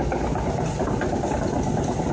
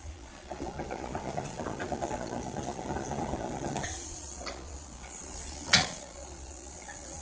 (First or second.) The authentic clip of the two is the first